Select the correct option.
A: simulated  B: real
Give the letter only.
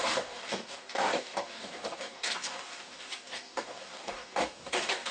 A